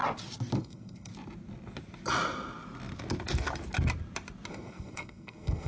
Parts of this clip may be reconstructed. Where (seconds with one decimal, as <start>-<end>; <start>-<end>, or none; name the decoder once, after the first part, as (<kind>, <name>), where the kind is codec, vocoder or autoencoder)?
0.6-1.1 (codec, SNAC); 4.5-5.7